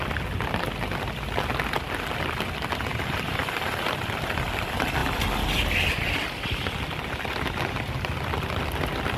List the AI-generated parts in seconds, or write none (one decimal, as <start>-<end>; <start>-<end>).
2.9-3.7

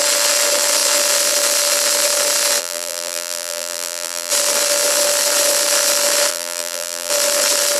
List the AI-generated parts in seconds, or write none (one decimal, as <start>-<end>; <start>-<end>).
2.6-4.3; 6.3-7.1

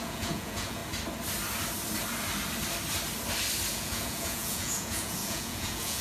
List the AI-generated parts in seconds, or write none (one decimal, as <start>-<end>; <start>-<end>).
0.0-0.8; 3.7-6.0

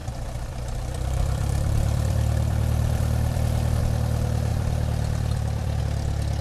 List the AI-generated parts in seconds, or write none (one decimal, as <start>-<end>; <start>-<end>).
0.0-3.8; 4.5-5.8

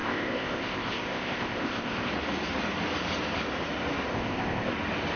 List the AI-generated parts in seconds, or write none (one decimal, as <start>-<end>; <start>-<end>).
0.0-2.1; 4.1-4.7